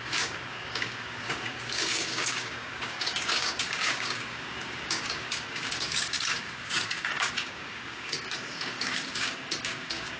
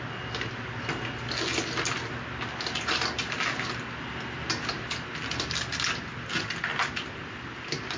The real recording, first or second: second